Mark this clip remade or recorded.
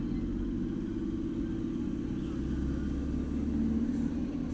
recorded